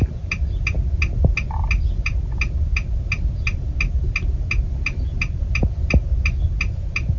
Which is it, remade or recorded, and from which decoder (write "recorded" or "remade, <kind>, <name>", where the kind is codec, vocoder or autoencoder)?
recorded